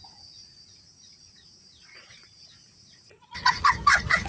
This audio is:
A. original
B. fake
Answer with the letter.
B